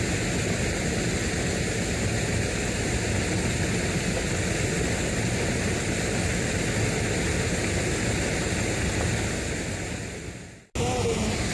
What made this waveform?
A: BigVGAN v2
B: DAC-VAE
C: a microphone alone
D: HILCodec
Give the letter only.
C